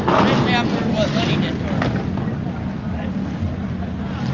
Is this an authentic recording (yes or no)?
yes